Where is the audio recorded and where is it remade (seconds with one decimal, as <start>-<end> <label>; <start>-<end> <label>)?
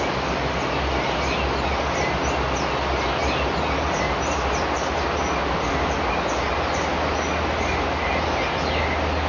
0.0-9.3 recorded